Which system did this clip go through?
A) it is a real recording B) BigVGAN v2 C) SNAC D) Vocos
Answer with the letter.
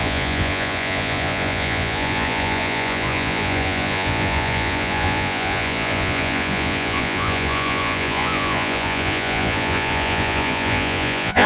D